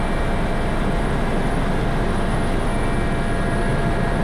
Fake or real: real